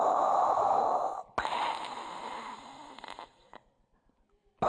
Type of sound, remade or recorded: recorded